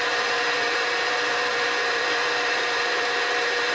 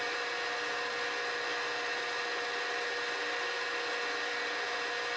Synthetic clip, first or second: first